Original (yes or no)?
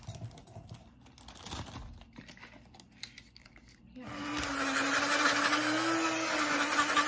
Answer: yes